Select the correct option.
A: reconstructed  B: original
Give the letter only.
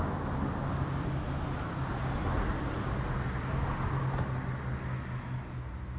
B